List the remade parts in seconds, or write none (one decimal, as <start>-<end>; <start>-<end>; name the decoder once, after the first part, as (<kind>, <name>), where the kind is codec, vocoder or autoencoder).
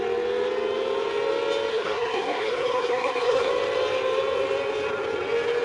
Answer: 1.7-3.5 (codec, SNAC)